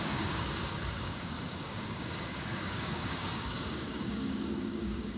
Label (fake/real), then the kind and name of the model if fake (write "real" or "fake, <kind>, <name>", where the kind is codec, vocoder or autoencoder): fake, codec, DAC